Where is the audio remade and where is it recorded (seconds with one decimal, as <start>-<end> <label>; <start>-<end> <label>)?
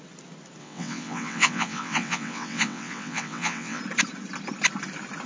0.0-0.6 recorded; 0.6-3.8 remade; 3.8-5.3 recorded